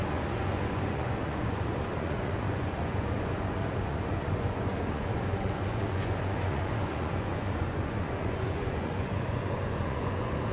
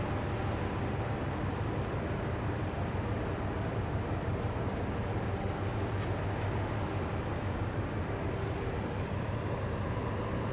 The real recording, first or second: second